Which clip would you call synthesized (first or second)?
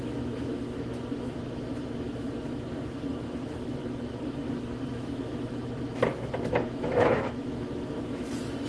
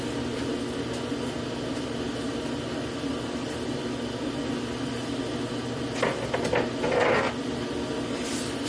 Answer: first